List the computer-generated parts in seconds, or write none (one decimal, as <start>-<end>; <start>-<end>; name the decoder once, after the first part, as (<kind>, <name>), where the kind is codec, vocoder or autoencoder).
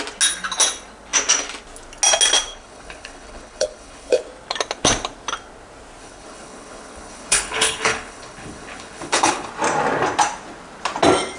2.5-4.2 (codec, HILCodec); 6.0-9.5